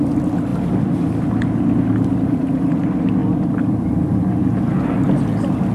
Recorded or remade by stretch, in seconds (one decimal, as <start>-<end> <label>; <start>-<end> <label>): 0.0-0.5 recorded; 0.5-2.7 remade; 2.7-3.2 recorded; 3.2-4.3 remade; 4.3-5.7 recorded